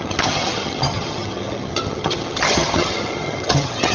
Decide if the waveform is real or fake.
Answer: fake